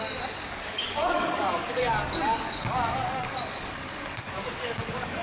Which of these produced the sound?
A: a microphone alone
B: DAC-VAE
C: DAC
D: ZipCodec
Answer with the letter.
C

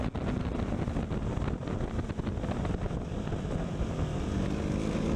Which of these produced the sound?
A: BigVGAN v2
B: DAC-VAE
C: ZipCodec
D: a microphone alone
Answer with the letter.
D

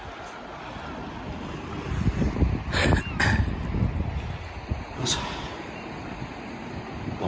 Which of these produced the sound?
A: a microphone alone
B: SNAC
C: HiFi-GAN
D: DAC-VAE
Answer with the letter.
A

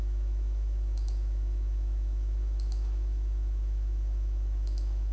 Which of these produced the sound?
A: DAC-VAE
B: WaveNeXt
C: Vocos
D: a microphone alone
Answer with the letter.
A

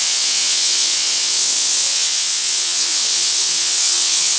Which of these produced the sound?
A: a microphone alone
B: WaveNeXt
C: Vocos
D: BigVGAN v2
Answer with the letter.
B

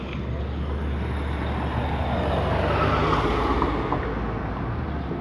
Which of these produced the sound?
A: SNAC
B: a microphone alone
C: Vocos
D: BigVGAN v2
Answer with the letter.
B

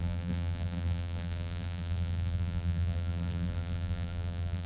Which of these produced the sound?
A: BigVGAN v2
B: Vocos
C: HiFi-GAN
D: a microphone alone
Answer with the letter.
A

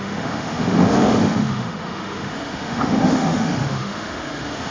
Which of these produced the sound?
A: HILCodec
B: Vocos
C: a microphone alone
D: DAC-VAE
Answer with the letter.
D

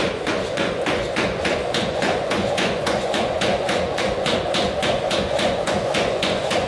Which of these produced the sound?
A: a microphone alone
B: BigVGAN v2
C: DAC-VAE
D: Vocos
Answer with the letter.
D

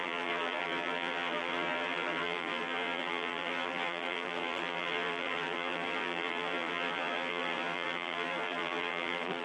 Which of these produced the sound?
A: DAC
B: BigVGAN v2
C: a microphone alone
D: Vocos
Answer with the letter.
B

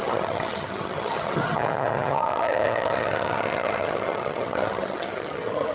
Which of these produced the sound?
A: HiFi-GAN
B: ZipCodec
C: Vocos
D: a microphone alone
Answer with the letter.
A